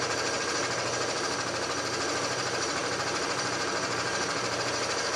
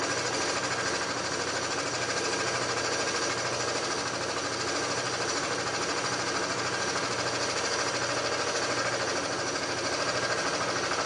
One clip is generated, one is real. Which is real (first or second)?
second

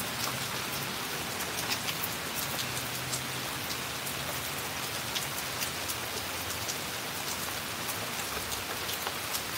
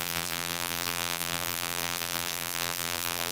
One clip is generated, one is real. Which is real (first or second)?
first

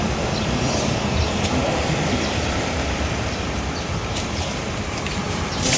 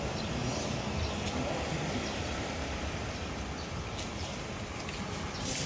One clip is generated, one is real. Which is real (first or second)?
second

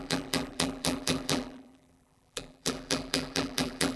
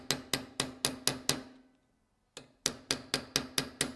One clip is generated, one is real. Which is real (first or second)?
second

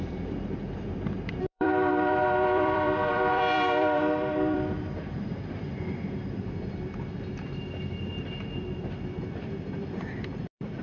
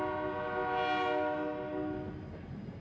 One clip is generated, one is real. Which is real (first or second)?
second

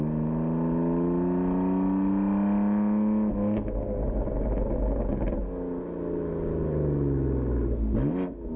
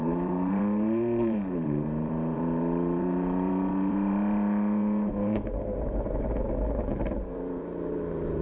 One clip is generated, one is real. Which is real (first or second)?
first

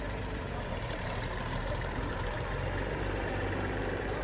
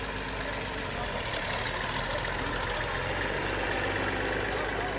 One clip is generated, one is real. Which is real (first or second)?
second